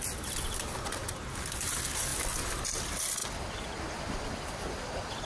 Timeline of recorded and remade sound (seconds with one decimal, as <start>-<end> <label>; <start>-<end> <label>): 0.0-5.3 recorded